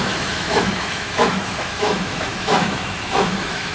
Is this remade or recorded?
remade